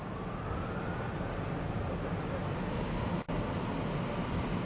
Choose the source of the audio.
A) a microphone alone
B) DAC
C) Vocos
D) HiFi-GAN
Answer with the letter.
A